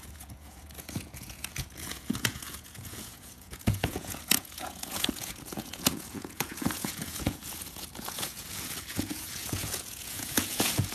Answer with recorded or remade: remade